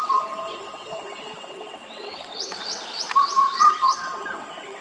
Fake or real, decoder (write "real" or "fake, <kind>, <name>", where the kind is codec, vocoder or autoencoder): fake, vocoder, WaveNeXt